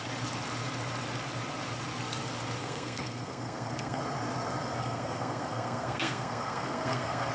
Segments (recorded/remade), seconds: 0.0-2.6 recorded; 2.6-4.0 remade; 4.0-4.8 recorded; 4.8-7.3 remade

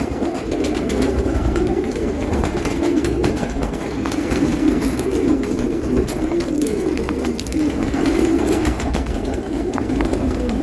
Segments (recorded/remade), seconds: 0.0-10.6 remade

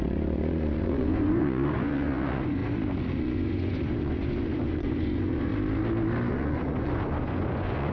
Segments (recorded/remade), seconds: 0.0-2.6 remade; 2.6-3.2 recorded; 3.2-5.5 remade; 5.5-6.3 recorded; 6.3-7.9 remade

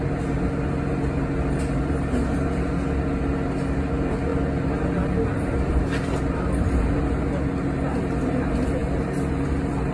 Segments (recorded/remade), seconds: 0.0-9.9 recorded

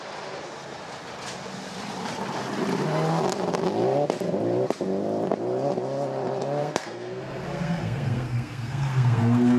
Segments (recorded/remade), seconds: 0.0-6.6 recorded; 6.6-9.6 remade

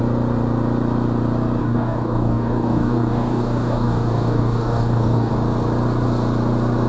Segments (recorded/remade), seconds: 0.0-1.6 recorded; 1.6-5.3 remade; 5.3-6.9 recorded

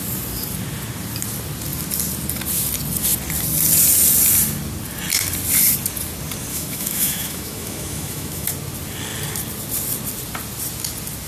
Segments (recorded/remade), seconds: 0.0-6.5 recorded; 6.5-8.5 remade; 8.5-11.3 recorded

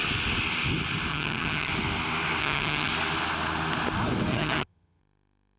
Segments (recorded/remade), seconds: 0.0-1.1 recorded; 1.1-1.7 remade; 1.7-2.4 recorded; 2.4-2.9 remade; 2.9-4.3 recorded; 4.3-5.0 remade; 5.0-5.6 recorded